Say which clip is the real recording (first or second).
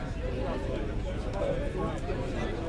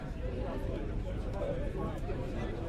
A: first